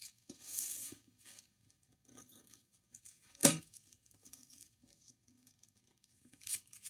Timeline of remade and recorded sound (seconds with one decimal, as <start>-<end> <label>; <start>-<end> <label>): 0.0-6.9 remade